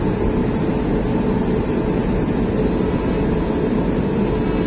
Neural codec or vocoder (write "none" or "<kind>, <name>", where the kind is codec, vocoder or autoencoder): none